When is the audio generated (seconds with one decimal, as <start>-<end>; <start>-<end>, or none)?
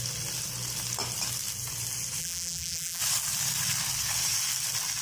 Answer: 2.2-3.0